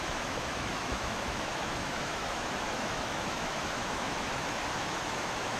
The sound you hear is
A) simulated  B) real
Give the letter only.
A